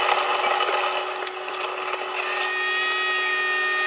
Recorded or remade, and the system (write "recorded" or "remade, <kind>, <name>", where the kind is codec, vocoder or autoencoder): recorded